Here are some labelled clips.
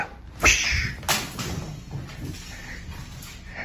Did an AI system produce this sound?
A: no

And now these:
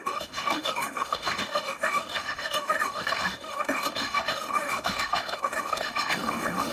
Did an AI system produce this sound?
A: yes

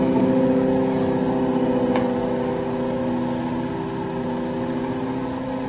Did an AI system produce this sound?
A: no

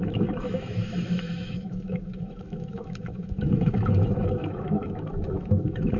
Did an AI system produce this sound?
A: yes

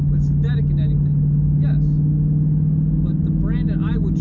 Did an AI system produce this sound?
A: no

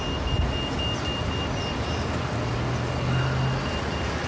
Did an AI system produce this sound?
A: no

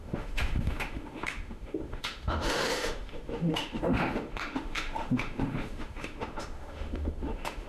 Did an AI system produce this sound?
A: yes